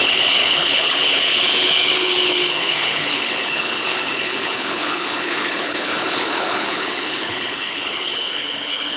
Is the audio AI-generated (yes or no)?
yes